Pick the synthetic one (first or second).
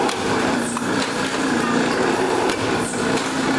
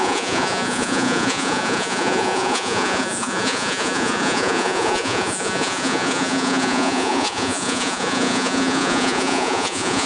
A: second